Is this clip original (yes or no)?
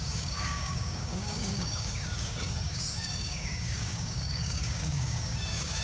no